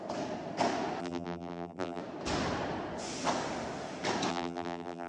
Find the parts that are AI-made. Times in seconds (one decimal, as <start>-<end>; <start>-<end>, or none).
1.0-2.0; 4.3-5.1